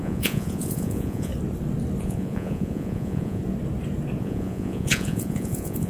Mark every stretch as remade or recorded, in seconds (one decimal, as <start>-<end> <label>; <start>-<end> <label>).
0.0-1.3 remade; 1.3-2.0 recorded; 2.0-3.4 remade; 3.4-4.2 recorded; 4.2-5.9 remade